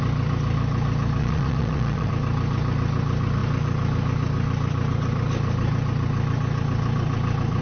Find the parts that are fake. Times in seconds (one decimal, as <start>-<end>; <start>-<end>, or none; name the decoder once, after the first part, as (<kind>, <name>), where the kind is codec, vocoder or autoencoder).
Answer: 1.2-2.1 (vocoder, Vocos)